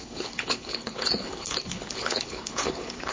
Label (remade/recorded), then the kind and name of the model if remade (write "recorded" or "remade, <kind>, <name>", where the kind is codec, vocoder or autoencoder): remade, codec, HILCodec